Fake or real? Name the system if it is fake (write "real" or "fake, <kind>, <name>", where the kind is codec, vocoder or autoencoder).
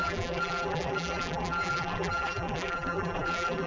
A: fake, vocoder, BigVGAN v2